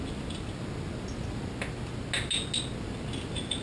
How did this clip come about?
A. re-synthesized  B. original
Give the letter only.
B